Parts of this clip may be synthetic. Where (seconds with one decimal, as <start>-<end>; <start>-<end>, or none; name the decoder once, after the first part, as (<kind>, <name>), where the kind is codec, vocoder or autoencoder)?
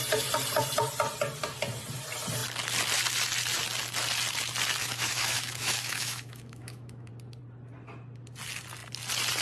4.8-7.1 (autoencoder, DAC-VAE)